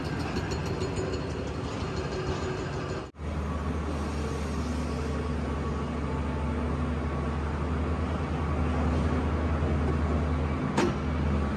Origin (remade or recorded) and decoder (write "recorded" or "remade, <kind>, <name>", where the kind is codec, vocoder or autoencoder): recorded